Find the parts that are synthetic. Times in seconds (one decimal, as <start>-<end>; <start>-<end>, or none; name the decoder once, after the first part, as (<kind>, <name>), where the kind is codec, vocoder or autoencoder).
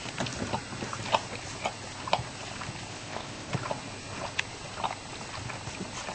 2.9-3.5 (codec, ZipCodec)